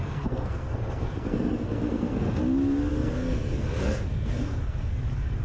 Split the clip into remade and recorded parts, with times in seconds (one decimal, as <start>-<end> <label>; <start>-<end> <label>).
0.0-2.4 remade; 2.4-2.9 recorded; 2.9-5.0 remade; 5.0-5.4 recorded